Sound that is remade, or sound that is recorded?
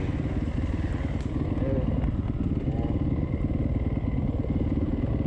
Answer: recorded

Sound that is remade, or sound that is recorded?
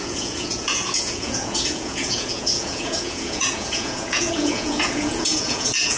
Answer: remade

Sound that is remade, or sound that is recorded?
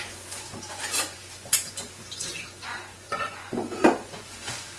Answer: remade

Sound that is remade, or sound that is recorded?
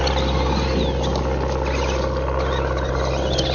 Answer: recorded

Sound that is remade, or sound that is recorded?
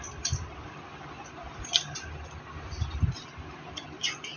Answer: recorded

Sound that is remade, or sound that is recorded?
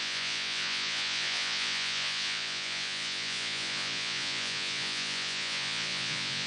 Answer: remade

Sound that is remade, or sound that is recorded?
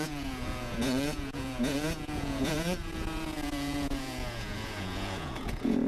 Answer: remade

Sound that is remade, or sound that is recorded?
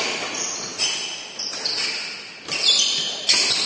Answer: recorded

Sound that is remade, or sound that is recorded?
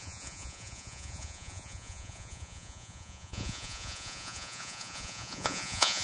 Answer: remade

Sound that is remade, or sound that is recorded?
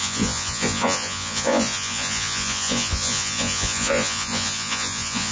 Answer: remade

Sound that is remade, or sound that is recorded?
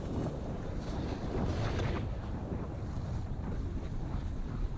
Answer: recorded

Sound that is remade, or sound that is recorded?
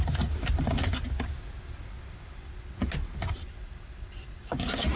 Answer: recorded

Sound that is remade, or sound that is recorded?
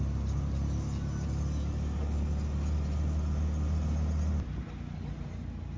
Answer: recorded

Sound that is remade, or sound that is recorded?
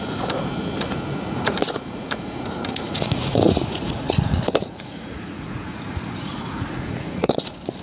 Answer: remade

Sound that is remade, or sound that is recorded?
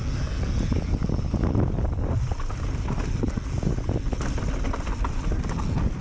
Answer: recorded